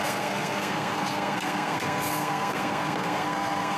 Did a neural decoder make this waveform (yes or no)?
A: yes